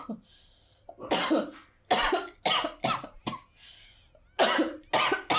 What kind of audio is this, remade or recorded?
recorded